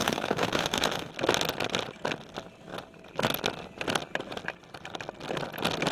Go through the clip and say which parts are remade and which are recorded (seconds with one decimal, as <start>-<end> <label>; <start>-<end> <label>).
0.0-1.1 remade; 1.1-5.9 recorded